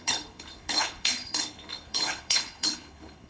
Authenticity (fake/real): fake